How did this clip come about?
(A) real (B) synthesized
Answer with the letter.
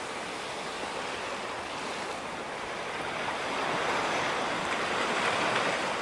A